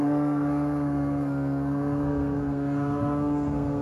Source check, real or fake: fake